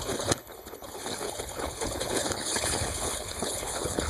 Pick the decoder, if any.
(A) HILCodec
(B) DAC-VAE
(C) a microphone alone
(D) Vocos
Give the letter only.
A